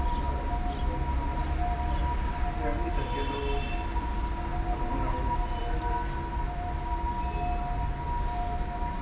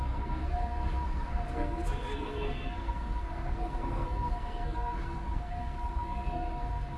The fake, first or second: second